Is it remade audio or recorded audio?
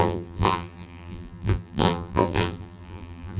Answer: remade